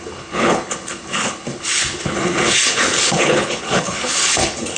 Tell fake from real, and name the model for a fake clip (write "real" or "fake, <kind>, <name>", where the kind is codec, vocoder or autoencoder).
fake, codec, HILCodec